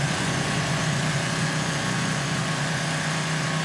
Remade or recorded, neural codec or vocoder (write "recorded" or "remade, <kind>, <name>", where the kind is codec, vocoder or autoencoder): remade, vocoder, Vocos